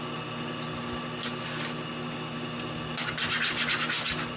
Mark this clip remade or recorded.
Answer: recorded